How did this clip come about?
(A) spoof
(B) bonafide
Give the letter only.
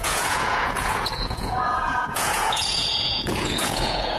A